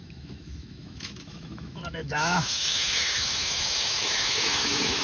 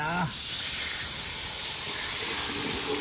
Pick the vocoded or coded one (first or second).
first